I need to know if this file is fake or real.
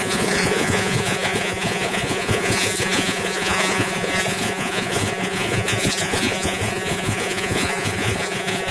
fake